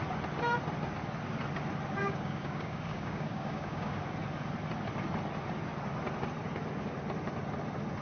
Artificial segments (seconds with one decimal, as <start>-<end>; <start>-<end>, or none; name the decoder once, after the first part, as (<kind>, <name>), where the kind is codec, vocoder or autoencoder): 2.0-4.0 (codec, DAC)